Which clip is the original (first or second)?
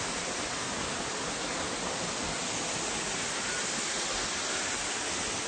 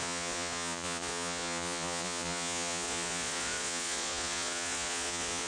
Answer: first